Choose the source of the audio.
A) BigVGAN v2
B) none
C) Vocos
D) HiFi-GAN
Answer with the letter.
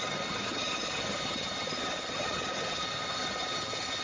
D